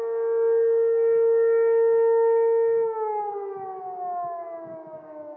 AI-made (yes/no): yes